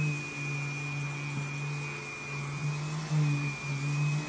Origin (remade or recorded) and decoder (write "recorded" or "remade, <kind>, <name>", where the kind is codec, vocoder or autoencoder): recorded